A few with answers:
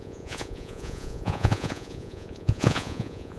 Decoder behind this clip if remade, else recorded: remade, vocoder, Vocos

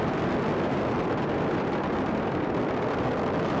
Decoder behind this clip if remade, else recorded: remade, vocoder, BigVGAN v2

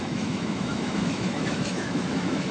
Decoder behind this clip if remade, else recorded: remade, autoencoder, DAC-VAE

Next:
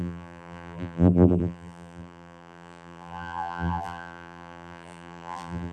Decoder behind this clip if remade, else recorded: remade, vocoder, BigVGAN v2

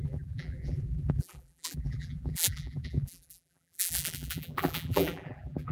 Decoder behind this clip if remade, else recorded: remade, vocoder, BigVGAN v2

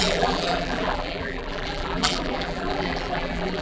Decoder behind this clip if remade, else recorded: remade, vocoder, BigVGAN v2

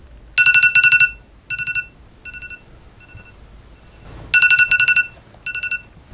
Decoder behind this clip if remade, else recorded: recorded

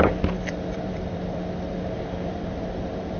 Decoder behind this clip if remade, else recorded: remade, vocoder, BigVGAN v2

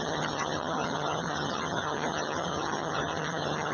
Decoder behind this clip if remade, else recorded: remade, vocoder, HiFi-GAN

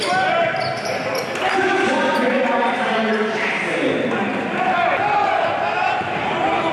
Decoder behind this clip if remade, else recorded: recorded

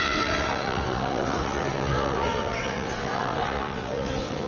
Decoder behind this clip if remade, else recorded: remade, vocoder, WaveNeXt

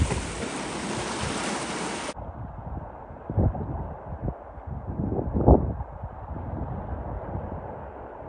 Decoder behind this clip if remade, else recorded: recorded